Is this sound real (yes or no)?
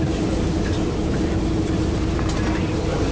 yes